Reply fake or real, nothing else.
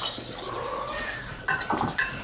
real